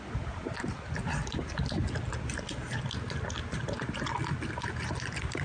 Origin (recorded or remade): recorded